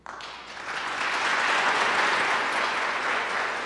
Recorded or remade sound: remade